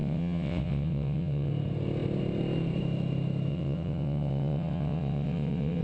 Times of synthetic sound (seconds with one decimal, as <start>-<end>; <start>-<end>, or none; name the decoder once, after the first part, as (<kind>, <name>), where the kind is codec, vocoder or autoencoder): 0.0-1.5 (vocoder, WaveNeXt); 3.5-5.8

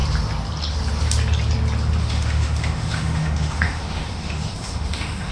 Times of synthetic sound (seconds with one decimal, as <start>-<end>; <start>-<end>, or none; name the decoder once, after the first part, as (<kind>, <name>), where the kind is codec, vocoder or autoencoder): 2.0-5.3 (autoencoder, DAC-VAE)

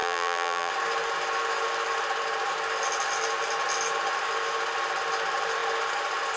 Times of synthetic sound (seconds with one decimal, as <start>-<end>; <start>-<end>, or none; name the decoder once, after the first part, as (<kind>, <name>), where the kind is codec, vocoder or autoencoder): 0.0-0.7 (vocoder, BigVGAN v2)

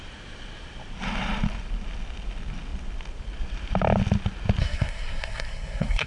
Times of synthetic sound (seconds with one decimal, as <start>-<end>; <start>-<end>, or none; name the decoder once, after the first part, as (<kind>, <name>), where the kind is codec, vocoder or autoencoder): 4.6-6.1 (codec, SNAC)

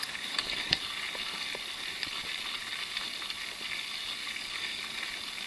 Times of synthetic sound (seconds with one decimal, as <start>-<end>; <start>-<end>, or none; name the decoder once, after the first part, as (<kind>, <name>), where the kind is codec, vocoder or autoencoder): 0.0-0.8 (codec, DAC); 4.2-4.8

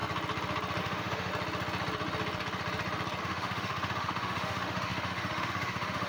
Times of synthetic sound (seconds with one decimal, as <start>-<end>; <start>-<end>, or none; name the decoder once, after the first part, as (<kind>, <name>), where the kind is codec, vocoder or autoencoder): 0.8-1.3 (autoencoder, DAC-VAE); 3.2-6.1

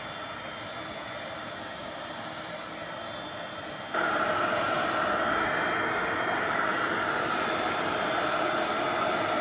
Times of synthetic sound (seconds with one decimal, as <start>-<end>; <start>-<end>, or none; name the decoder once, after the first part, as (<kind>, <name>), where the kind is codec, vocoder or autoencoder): 0.0-9.4 (vocoder, BigVGAN v2)